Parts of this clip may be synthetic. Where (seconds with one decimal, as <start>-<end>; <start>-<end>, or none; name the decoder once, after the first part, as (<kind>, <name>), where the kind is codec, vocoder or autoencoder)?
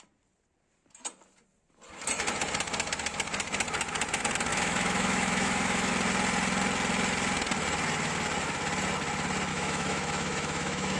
4.5-5.9 (autoencoder, DAC-VAE); 9.5-11.0